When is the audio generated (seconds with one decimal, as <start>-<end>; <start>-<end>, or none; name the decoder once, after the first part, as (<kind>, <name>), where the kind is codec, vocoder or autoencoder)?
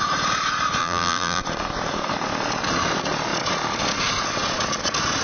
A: 0.8-1.4 (vocoder, BigVGAN v2)